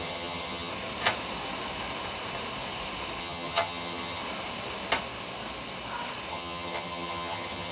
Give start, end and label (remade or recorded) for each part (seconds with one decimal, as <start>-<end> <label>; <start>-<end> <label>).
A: 0.0-0.7 remade; 0.7-3.2 recorded; 3.2-4.2 remade; 4.2-6.3 recorded; 6.3-7.7 remade